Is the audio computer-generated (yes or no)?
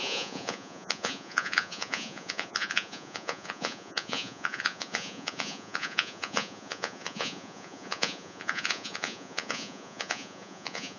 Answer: yes